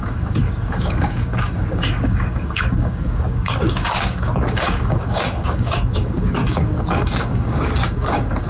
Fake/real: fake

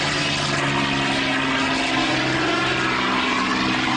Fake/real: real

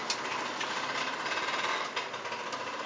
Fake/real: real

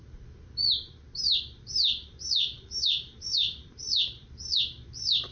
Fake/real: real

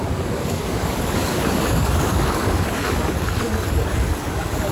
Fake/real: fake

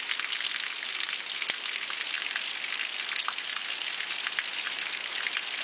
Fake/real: real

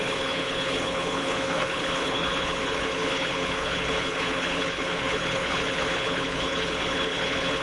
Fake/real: fake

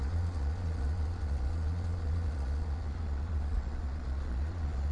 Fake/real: fake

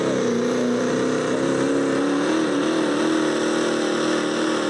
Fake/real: real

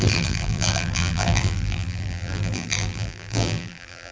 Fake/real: fake